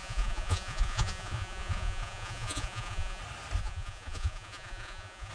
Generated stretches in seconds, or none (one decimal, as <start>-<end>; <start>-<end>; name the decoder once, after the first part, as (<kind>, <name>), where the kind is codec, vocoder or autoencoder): 0.0-3.2 (vocoder, Vocos); 3.6-5.3